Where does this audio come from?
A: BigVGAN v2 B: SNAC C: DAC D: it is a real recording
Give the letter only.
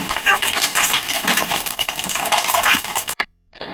C